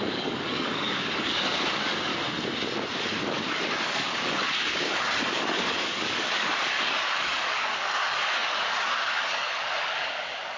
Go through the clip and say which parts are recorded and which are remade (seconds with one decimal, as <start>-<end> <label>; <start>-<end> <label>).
0.0-2.1 remade; 2.1-3.1 recorded; 3.1-10.6 remade

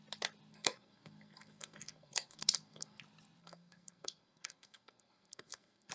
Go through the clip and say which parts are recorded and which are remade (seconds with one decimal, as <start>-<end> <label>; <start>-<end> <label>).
0.0-0.5 recorded; 0.5-3.0 remade; 3.0-3.4 recorded; 3.4-5.9 remade

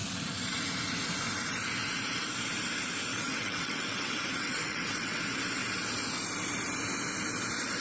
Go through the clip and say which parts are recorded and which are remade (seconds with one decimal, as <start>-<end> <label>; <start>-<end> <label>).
0.0-3.1 recorded; 3.1-5.2 remade; 5.2-7.8 recorded

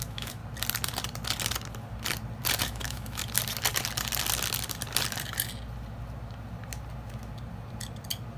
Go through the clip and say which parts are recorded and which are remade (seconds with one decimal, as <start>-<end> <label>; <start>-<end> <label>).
0.0-0.4 remade; 0.4-2.6 recorded; 2.6-3.2 remade; 3.2-8.4 recorded

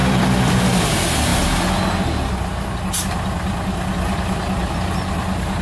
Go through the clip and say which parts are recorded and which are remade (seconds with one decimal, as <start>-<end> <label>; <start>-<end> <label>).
0.0-0.5 remade; 0.5-5.6 recorded

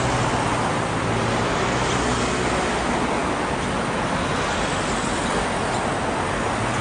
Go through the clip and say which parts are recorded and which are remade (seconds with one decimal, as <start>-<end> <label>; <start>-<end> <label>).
0.0-6.8 recorded